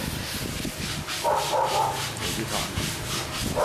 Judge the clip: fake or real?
real